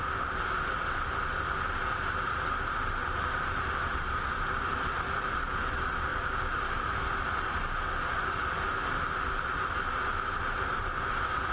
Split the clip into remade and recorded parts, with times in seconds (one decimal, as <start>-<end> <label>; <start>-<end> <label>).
0.0-11.5 recorded

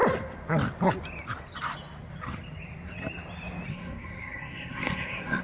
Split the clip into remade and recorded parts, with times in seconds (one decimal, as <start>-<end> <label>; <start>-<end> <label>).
0.0-3.7 recorded; 3.7-5.4 remade

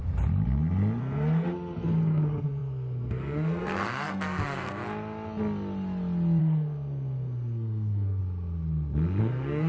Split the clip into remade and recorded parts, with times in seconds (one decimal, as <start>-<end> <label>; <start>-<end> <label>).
0.0-1.0 recorded; 1.0-4.8 remade; 4.8-6.4 recorded; 6.4-8.2 remade; 8.2-9.2 recorded; 9.2-9.7 remade